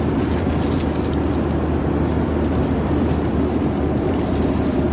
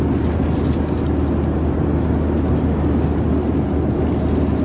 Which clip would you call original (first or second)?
second